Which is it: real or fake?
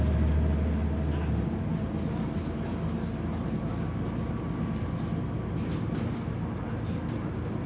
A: real